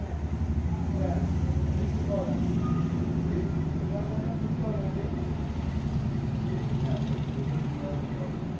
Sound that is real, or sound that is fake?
real